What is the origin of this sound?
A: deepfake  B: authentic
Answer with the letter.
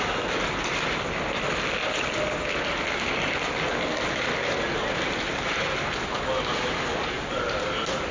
B